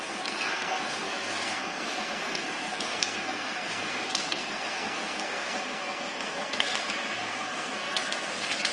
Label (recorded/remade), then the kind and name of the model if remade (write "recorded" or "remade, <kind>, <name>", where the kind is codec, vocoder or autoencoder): remade, codec, SNAC